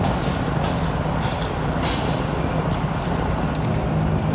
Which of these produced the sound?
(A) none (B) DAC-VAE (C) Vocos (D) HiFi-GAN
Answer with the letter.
A